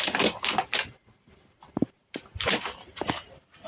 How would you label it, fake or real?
fake